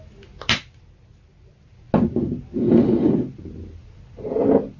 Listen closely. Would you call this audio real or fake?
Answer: real